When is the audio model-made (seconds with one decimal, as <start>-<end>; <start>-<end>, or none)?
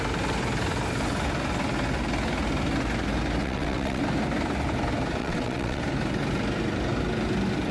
3.4-4.0; 5.2-5.8